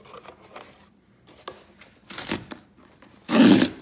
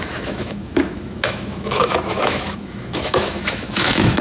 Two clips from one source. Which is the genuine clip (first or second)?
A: first